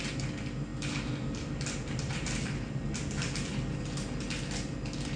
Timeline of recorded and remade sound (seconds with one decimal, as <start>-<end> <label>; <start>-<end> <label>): 0.0-5.2 recorded